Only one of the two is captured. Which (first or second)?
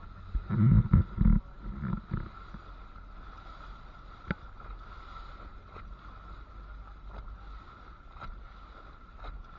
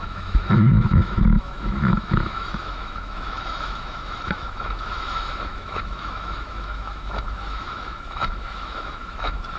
first